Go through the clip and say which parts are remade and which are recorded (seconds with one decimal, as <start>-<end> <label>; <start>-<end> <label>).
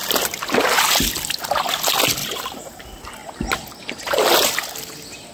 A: 0.0-2.2 recorded; 2.2-2.8 remade; 2.8-5.3 recorded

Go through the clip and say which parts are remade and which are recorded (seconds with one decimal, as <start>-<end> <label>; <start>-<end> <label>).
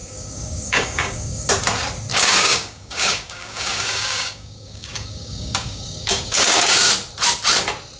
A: 0.0-1.5 remade; 1.5-2.1 recorded; 2.1-6.9 remade; 6.9-8.0 recorded